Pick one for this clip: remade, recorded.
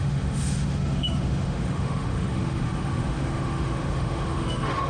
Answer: remade